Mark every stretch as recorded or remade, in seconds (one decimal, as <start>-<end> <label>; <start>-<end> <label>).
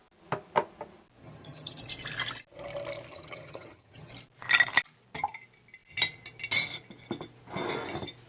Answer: 0.0-1.2 recorded; 1.2-1.8 remade; 1.8-3.1 recorded; 3.1-4.1 remade; 4.1-8.3 recorded